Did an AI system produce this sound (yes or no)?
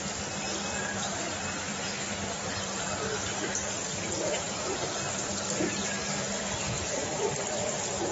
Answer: no